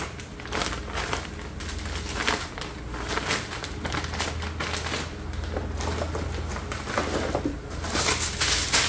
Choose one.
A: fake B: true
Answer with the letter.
B